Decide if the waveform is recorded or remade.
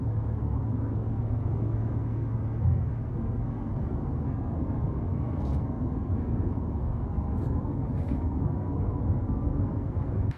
remade